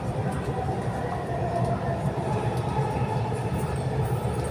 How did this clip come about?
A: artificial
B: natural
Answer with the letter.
B